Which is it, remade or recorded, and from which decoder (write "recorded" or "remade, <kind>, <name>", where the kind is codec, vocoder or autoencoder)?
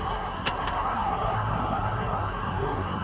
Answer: remade, codec, SNAC